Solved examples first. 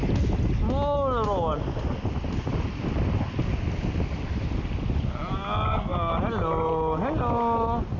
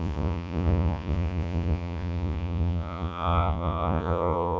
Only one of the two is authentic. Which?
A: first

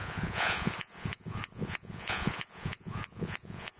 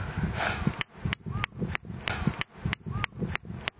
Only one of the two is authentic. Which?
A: second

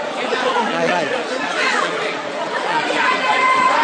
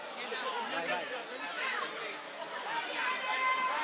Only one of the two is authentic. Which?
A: second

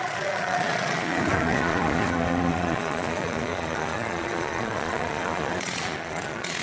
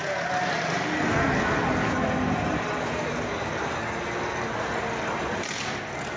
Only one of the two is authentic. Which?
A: second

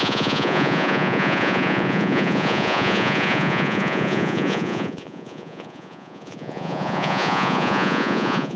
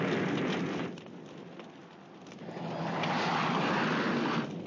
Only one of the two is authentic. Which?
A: second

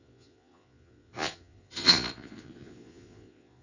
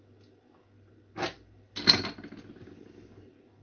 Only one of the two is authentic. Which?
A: second